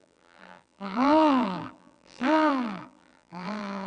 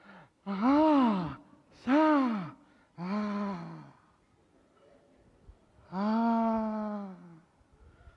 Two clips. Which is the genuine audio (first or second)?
second